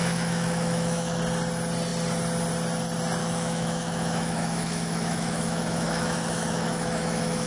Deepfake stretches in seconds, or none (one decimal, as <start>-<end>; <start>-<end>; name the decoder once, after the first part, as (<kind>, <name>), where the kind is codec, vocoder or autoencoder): 0.0-1.2 (autoencoder, DAC-VAE); 3.2-7.5